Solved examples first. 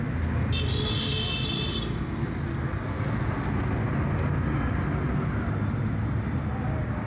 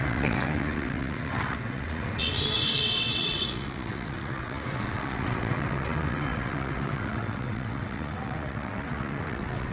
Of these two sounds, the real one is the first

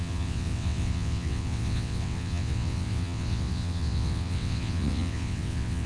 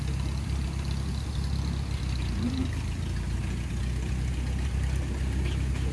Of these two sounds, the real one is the second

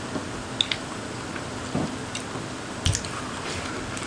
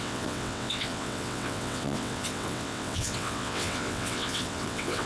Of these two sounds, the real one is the first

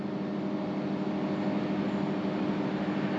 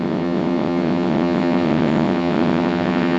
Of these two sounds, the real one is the first